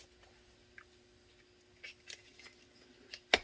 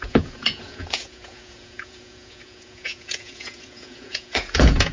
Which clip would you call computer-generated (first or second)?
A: second